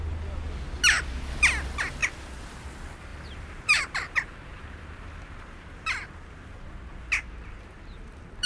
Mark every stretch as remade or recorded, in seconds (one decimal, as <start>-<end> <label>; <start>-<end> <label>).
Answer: 0.0-2.0 recorded; 2.0-2.5 remade; 2.5-3.1 recorded; 3.1-6.1 remade; 6.1-6.9 recorded; 6.9-8.5 remade